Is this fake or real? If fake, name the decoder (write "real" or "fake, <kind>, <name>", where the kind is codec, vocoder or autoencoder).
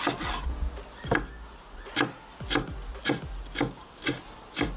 real